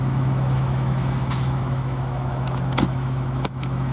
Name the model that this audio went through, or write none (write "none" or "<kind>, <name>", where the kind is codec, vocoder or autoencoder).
autoencoder, DAC-VAE